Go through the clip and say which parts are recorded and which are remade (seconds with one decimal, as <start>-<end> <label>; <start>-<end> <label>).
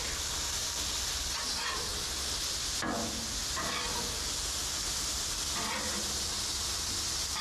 0.0-7.4 recorded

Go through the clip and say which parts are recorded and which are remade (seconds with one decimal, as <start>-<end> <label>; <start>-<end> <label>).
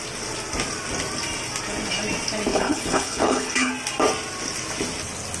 0.0-2.5 recorded; 2.5-3.7 remade; 3.7-5.4 recorded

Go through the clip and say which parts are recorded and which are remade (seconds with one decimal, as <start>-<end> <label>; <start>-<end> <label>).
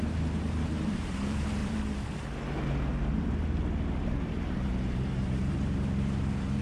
0.0-1.6 remade; 1.6-4.0 recorded; 4.0-6.6 remade